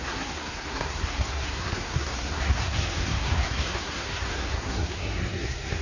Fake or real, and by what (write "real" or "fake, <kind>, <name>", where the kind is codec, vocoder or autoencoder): fake, codec, SNAC